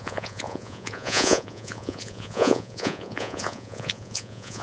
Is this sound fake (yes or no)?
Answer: yes